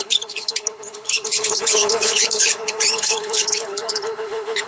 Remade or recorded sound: remade